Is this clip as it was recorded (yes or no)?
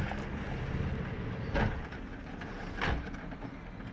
yes